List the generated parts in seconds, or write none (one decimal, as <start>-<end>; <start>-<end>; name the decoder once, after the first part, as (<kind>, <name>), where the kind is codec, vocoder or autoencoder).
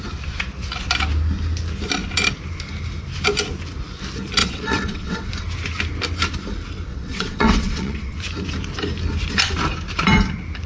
4.4-5.3 (vocoder, WaveNeXt); 6.9-8.2